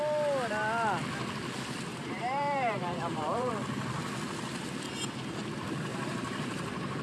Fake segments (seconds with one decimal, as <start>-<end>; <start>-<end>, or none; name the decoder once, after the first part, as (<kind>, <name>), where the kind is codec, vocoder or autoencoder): 1.9-3.5 (vocoder, BigVGAN v2); 5.9-7.0